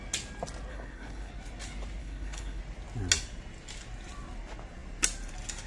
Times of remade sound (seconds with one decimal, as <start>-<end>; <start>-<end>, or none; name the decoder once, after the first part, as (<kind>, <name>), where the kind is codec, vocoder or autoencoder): 0.7-1.3 (codec, HILCodec); 2.0-2.6